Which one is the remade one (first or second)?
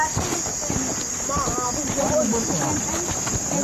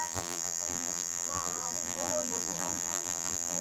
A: second